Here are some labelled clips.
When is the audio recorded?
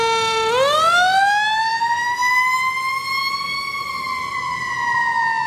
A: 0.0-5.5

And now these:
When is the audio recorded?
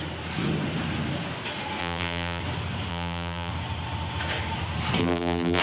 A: 0.0-1.8; 2.4-2.9; 3.5-5.0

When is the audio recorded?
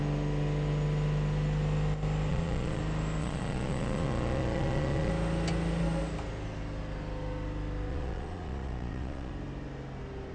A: 0.0-2.3; 2.8-3.2; 5.1-7.9; 9.3-10.3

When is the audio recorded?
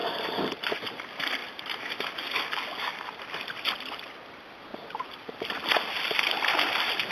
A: 0.8-1.4; 2.0-2.9; 3.4-7.1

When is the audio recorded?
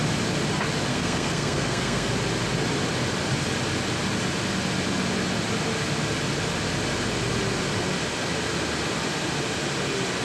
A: 0.0-0.9; 2.1-10.2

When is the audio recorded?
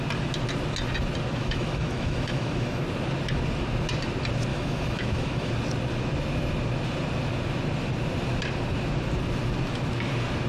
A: 0.0-1.4; 2.8-4.5; 5.5-10.5